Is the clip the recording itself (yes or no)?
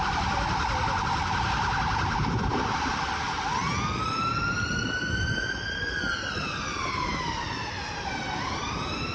yes